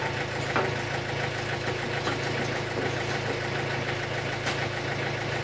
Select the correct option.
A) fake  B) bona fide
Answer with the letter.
B